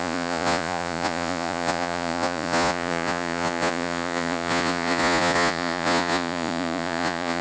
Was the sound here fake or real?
fake